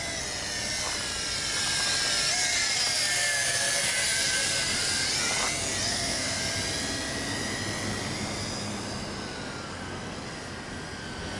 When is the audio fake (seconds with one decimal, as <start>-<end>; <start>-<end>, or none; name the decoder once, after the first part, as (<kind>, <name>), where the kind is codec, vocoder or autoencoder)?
5.9-6.4 (codec, SNAC)